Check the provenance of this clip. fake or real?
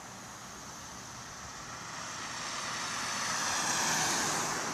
real